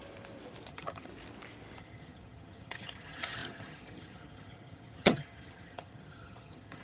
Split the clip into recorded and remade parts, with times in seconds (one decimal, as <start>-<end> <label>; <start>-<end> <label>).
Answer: 0.0-0.7 recorded; 0.7-1.1 remade; 1.1-1.8 recorded; 1.8-6.8 remade